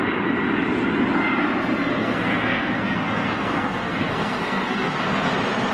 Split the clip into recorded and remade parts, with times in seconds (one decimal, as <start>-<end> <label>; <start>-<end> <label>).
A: 0.0-1.9 recorded; 1.9-5.3 remade; 5.3-5.7 recorded